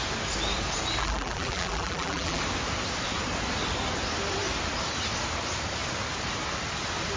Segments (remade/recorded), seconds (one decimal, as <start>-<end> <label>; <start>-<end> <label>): 0.0-1.0 recorded; 1.0-2.4 remade; 2.4-7.2 recorded